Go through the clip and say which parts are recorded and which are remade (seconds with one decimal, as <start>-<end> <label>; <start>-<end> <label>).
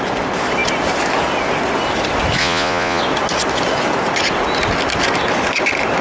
0.0-2.4 recorded; 2.4-3.0 remade; 3.0-6.0 recorded